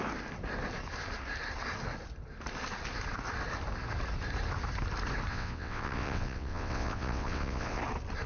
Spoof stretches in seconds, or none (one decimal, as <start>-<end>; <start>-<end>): 5.3-7.8